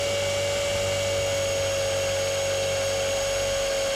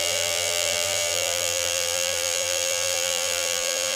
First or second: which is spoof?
second